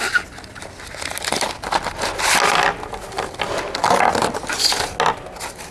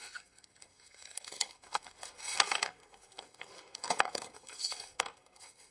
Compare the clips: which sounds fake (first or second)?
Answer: second